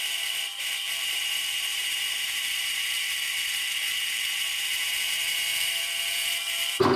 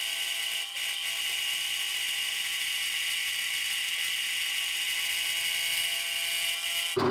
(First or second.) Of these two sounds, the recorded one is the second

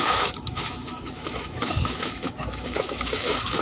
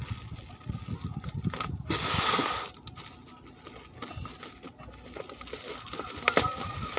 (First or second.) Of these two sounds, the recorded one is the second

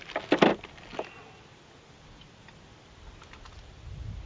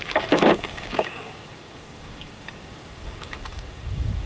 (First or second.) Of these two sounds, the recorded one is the first